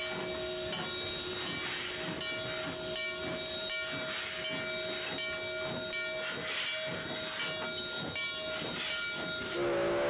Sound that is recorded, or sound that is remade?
recorded